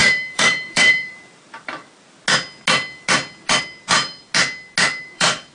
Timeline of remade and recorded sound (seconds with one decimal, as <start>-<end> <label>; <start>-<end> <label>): 0.0-1.8 remade; 1.8-3.6 recorded; 3.6-4.2 remade; 4.2-4.9 recorded; 4.9-5.5 remade

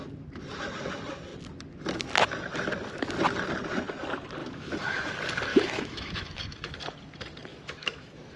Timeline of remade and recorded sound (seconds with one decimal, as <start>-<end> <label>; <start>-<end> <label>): 0.0-4.4 recorded; 4.4-5.1 remade; 5.1-5.5 recorded; 5.5-6.8 remade; 6.8-7.5 recorded; 7.5-8.4 remade